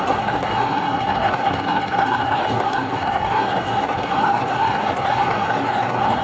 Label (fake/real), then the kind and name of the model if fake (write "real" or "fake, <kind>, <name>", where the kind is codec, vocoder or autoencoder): fake, codec, SNAC